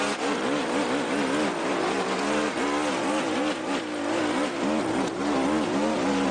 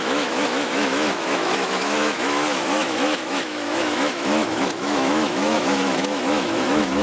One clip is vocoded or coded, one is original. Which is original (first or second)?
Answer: first